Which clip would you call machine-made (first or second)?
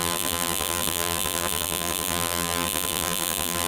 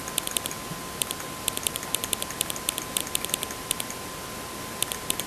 first